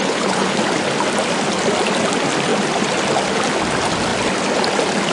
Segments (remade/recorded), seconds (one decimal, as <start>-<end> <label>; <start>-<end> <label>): 0.0-0.6 remade; 0.6-5.1 recorded

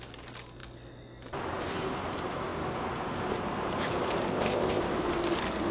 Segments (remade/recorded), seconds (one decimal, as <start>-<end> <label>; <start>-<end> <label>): 0.0-4.3 recorded; 4.3-4.8 remade; 4.8-5.7 recorded

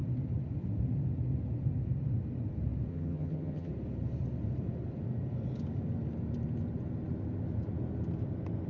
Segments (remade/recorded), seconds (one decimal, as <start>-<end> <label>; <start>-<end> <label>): 0.0-2.9 recorded; 2.9-3.7 remade; 3.7-8.7 recorded

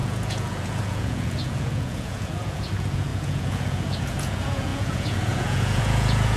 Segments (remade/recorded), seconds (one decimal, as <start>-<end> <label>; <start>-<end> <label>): 0.0-6.4 remade

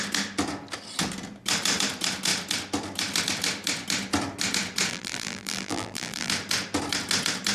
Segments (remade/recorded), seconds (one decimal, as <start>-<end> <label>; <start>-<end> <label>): 0.0-4.9 recorded; 4.9-6.3 remade; 6.3-7.5 recorded

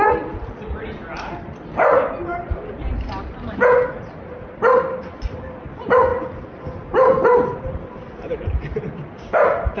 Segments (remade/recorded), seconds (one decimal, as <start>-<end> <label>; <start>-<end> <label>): 0.0-9.8 recorded

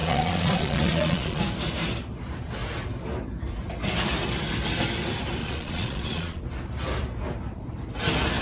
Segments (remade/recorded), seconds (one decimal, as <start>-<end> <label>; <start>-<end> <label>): 0.0-1.4 remade; 1.4-5.4 recorded; 5.4-6.4 remade; 6.4-8.4 recorded

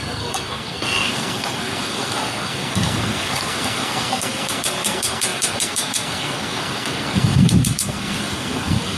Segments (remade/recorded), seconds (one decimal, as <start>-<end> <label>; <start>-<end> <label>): 0.0-9.0 remade